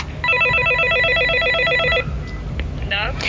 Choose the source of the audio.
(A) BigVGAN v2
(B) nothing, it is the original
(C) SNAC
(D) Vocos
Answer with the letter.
B